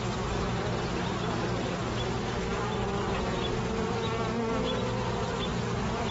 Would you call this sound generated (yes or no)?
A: no